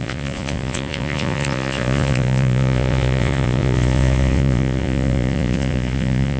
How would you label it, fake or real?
fake